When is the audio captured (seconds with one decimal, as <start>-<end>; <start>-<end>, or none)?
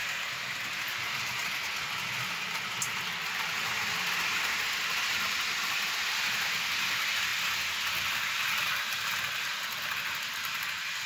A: 0.0-11.1